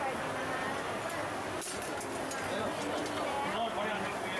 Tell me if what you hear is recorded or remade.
recorded